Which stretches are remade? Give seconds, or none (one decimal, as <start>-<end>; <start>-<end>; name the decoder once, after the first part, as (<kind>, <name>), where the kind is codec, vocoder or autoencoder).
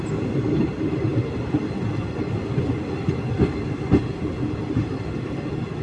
none